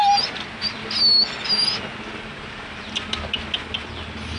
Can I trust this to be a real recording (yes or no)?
yes